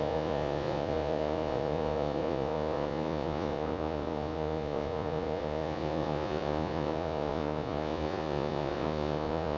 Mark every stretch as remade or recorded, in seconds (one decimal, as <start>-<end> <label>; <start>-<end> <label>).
0.0-9.6 remade